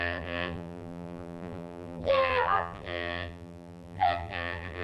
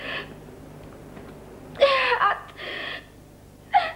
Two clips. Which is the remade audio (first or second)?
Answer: first